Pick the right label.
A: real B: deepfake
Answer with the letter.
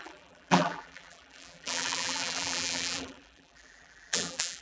B